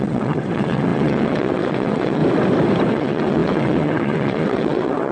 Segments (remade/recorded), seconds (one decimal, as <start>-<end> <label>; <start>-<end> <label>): 0.0-2.2 remade; 2.2-2.9 recorded; 2.9-5.1 remade

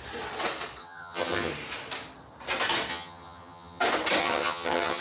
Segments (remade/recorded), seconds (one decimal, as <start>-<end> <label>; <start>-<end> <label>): 0.0-0.8 recorded; 0.8-1.5 remade; 1.5-2.9 recorded; 2.9-3.8 remade; 3.8-4.2 recorded; 4.2-5.0 remade

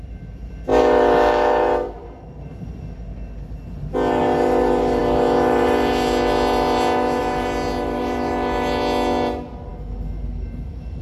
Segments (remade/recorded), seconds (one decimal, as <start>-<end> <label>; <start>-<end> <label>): 0.0-11.0 recorded

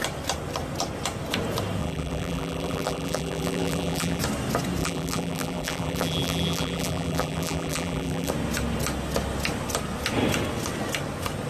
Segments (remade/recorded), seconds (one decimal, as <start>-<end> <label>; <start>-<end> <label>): 0.0-1.8 recorded; 1.8-4.2 remade; 4.2-4.8 recorded; 4.8-8.3 remade; 8.3-11.5 recorded

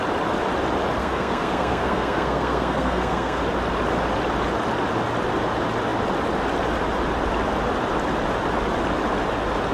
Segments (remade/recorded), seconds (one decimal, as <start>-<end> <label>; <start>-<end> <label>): 0.0-1.0 recorded; 1.0-3.4 remade; 3.4-9.7 recorded